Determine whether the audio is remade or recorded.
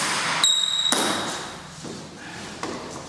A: recorded